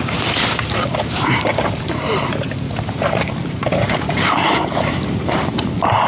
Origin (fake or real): fake